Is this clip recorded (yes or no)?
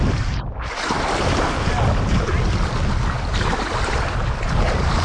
yes